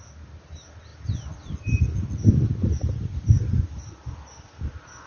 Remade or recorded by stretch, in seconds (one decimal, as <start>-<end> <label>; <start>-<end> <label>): 0.0-5.1 recorded